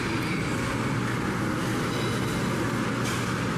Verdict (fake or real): real